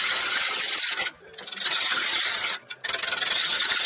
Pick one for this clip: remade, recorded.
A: recorded